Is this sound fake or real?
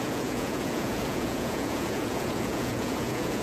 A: fake